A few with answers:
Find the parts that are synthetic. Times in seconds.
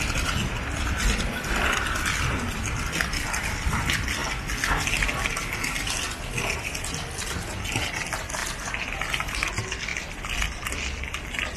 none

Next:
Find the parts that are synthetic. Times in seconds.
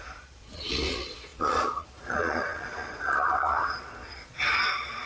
0.0-5.1